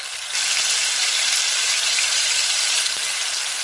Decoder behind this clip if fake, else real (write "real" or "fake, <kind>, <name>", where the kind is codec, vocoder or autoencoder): real